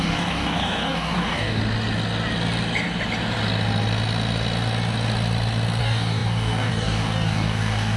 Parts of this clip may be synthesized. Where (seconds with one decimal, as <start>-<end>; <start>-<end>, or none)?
0.0-1.6; 5.8-8.0